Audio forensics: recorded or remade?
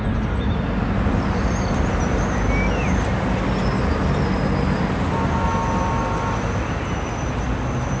recorded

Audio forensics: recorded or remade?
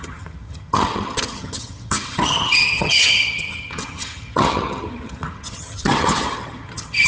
remade